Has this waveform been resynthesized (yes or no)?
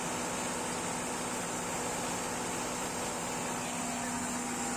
no